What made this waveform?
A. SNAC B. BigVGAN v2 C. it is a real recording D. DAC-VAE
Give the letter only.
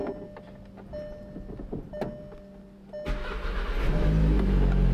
C